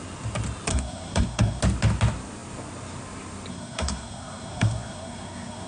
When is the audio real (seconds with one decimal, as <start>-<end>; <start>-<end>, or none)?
0.0-0.7; 1.6-3.5